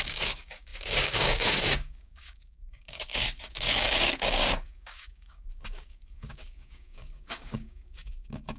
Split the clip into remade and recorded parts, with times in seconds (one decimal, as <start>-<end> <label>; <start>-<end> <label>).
0.0-8.6 remade